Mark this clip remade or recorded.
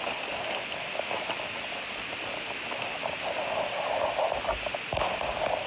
recorded